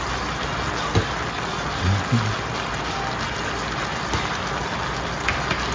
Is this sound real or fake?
real